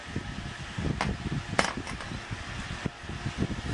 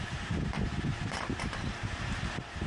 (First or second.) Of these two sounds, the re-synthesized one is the second